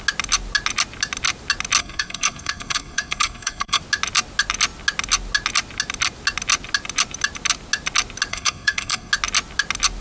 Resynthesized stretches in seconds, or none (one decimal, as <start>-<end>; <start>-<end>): 1.8-3.8; 8.3-9.1